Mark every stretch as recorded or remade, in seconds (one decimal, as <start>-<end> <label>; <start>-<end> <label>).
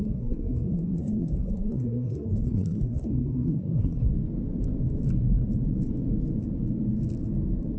0.0-4.1 remade; 4.1-7.8 recorded